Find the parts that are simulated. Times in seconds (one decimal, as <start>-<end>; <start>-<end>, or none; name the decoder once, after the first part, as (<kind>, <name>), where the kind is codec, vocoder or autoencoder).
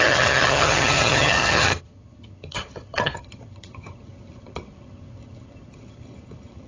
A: 0.0-6.7 (vocoder, HiFi-GAN)